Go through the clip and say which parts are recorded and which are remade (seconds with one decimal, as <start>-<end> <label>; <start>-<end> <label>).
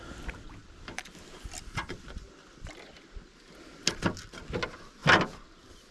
0.0-5.9 recorded